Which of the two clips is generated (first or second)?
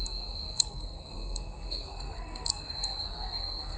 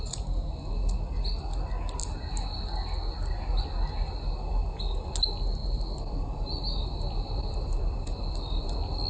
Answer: first